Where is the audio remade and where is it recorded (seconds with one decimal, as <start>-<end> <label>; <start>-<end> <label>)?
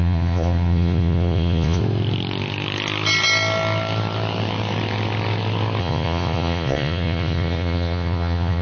0.0-1.8 remade; 1.8-5.8 recorded; 5.8-8.6 remade